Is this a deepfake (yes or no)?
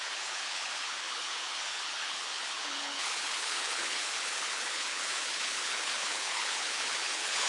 yes